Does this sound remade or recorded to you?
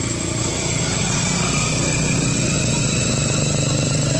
recorded